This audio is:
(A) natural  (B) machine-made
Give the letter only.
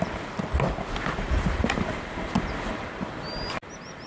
A